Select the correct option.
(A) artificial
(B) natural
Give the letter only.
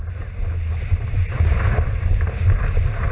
B